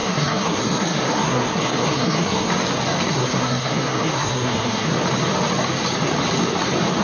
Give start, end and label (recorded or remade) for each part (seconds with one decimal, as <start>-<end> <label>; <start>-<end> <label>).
0.0-2.5 remade; 2.5-3.1 recorded; 3.1-4.9 remade; 4.9-7.0 recorded